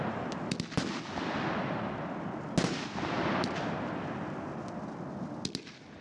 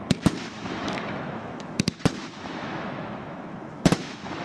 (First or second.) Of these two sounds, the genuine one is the first